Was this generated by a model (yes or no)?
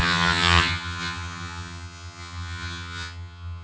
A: yes